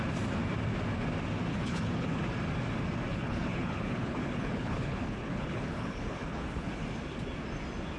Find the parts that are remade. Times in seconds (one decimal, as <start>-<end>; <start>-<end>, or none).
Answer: 1.5-2.2; 3.1-6.8